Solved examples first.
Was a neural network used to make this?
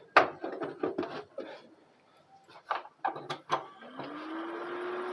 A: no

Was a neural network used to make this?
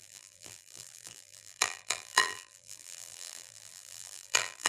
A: yes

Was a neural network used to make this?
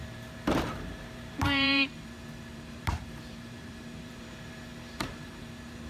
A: yes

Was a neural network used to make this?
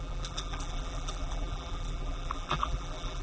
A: yes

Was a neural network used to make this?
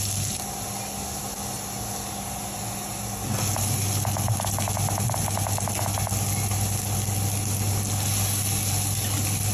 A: no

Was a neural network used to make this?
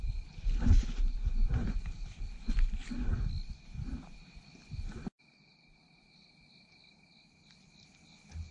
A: no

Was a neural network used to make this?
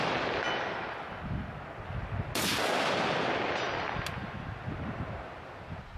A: no